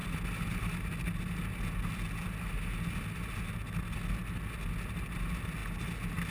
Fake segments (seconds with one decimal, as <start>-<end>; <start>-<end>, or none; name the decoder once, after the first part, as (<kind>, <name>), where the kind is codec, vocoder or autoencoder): none